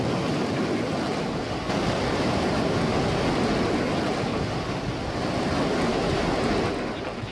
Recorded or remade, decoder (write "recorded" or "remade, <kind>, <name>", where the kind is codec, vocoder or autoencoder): recorded